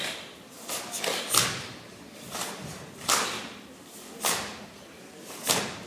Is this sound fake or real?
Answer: real